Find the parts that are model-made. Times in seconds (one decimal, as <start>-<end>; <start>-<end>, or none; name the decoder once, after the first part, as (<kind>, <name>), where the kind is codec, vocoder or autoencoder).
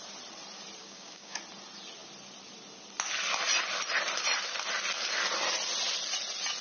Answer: 0.8-1.4 (codec, DAC)